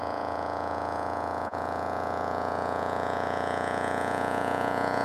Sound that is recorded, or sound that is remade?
remade